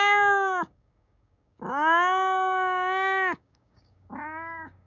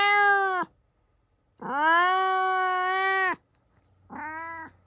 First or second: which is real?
second